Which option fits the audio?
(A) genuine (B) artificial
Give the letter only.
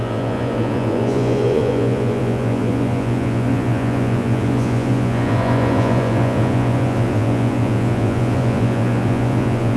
B